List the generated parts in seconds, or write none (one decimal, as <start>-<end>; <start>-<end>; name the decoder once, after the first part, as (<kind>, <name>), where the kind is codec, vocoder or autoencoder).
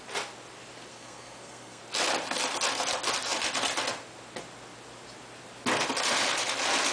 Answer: 0.9-1.8 (codec, SNAC)